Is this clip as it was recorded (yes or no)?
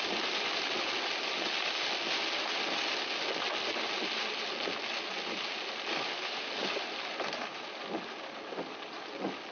yes